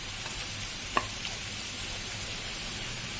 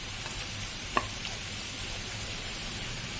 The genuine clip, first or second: first